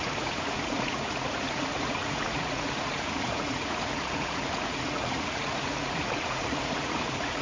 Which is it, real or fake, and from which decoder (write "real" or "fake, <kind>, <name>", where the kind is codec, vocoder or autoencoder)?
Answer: fake, vocoder, Vocos